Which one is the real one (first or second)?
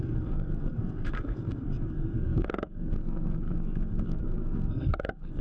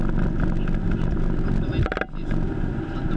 second